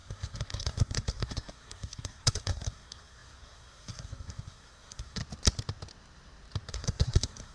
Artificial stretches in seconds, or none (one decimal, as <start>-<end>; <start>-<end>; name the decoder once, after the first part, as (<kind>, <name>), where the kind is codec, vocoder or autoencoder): 0.0-5.2 (codec, SNAC); 6.7-7.5